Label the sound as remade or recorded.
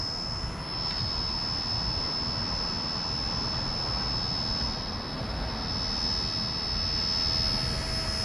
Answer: recorded